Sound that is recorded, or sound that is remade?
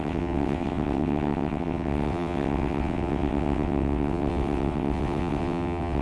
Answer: remade